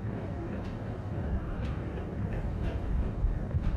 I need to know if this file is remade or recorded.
remade